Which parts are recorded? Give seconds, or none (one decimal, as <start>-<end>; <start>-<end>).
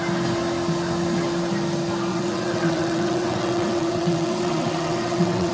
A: 0.0-2.1